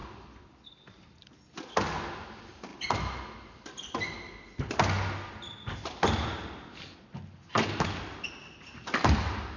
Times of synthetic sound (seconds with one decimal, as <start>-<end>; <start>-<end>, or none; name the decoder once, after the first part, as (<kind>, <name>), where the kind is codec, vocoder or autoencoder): none